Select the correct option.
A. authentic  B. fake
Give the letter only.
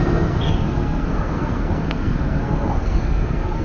B